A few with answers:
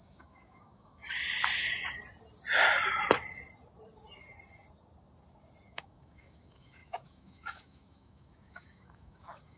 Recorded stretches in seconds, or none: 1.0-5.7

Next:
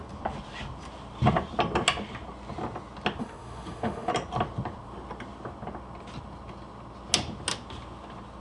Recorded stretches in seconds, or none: 0.0-3.2; 4.1-8.4

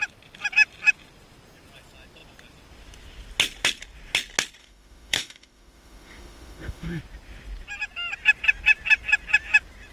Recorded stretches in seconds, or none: 0.0-4.6; 7.0-9.9

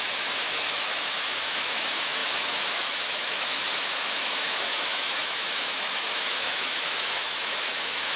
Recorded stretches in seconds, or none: none

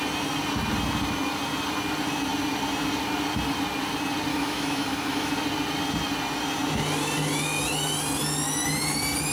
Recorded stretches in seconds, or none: 0.0-4.3; 5.3-9.3

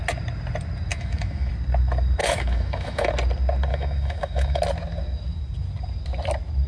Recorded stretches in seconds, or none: 0.0-0.9; 1.5-2.2; 3.1-3.7; 4.6-6.7

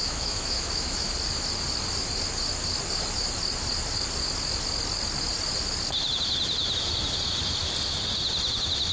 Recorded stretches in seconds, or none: 1.1-8.9

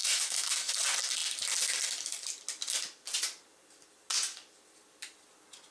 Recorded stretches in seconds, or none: 0.7-5.7